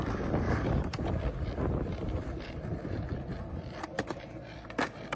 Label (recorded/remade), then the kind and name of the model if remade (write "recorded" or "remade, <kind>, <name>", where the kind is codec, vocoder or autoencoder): remade, vocoder, BigVGAN v2